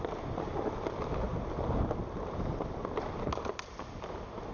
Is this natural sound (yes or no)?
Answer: yes